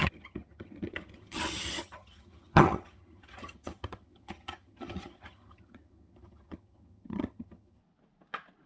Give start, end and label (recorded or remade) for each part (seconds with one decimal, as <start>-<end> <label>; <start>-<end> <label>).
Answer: 0.0-7.8 remade; 7.8-8.7 recorded

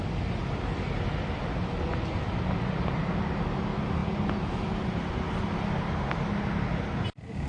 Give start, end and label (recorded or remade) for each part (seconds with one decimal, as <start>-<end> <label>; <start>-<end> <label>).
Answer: 0.0-7.5 recorded

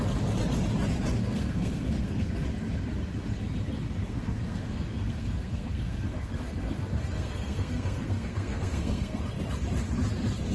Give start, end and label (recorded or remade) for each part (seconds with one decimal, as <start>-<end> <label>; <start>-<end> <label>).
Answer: 0.0-1.2 recorded; 1.2-2.3 remade; 2.3-4.0 recorded; 4.0-9.2 remade; 9.2-10.5 recorded

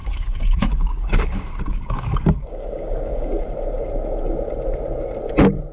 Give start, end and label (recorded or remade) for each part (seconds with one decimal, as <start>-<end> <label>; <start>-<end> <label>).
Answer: 0.0-3.4 remade; 3.4-5.7 recorded

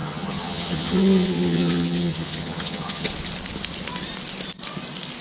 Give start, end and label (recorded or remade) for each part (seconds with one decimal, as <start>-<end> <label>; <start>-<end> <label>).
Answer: 0.0-3.1 remade; 3.1-5.2 recorded

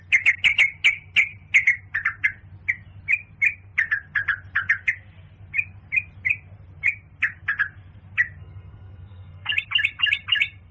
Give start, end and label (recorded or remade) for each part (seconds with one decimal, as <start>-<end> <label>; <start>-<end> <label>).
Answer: 0.0-8.4 recorded; 8.4-9.5 remade; 9.5-10.7 recorded

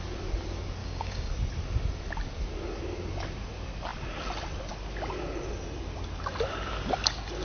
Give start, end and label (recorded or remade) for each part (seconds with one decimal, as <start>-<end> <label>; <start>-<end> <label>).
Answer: 0.0-0.8 recorded; 0.8-1.3 remade; 1.3-7.4 recorded